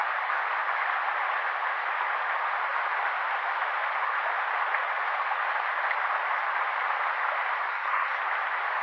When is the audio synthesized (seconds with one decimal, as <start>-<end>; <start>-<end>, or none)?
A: 7.7-8.2